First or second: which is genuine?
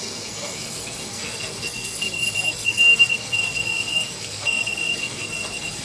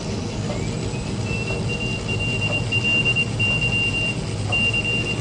second